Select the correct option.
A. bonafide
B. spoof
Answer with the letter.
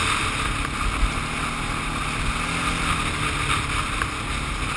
A